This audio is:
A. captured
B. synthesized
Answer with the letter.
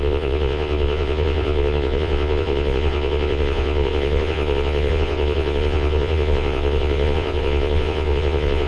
B